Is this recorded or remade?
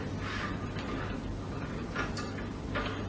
recorded